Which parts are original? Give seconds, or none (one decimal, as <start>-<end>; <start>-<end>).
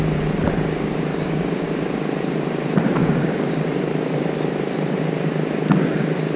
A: 0.0-1.1; 1.7-3.0; 3.5-6.4